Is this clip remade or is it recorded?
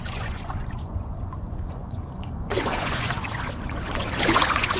remade